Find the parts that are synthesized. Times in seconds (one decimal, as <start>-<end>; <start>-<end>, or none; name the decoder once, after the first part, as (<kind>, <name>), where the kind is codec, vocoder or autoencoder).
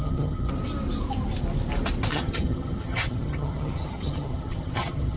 0.0-0.5 (vocoder, HiFi-GAN); 2.1-5.2